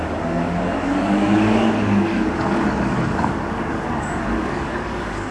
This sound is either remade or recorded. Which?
remade